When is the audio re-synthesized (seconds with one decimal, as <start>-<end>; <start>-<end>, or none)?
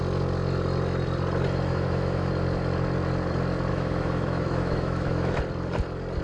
1.7-2.3; 3.7-5.4